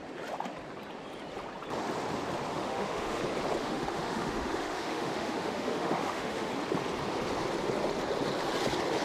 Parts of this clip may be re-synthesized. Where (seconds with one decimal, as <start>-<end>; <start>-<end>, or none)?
2.5-3.2; 3.6-6.5